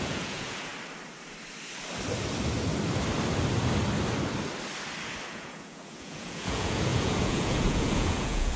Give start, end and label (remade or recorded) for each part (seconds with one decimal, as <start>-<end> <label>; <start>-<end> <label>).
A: 0.0-0.7 remade; 0.7-5.3 recorded; 5.3-8.6 remade